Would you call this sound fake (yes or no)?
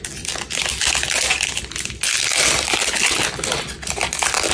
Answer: no